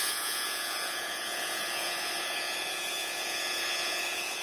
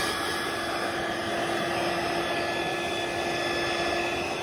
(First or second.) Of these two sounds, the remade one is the first